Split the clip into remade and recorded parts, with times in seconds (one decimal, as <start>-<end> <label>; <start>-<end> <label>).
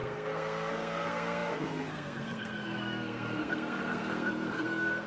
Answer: 0.0-5.1 remade